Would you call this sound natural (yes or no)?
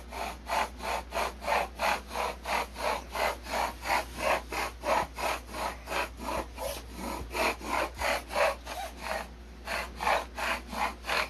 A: yes